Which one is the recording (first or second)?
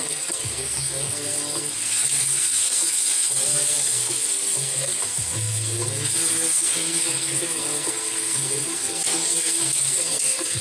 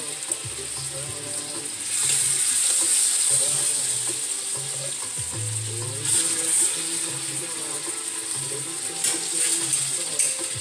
second